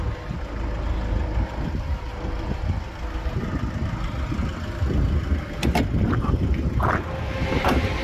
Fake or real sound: real